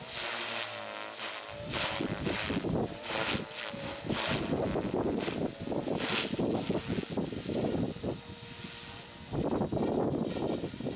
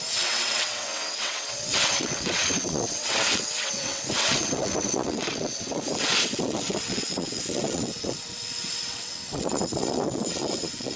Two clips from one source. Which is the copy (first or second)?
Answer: second